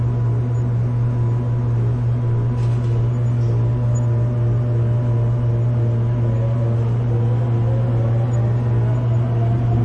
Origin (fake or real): real